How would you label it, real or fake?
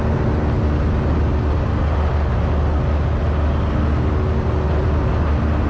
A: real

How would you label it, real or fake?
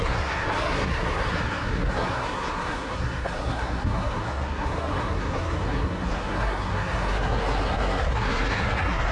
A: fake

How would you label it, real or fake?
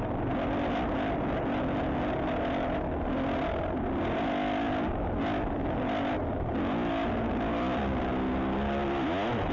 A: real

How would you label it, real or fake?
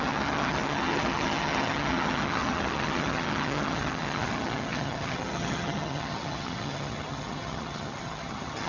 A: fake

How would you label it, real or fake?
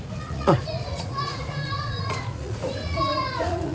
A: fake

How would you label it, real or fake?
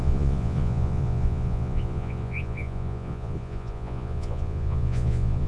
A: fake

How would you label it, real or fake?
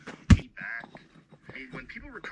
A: real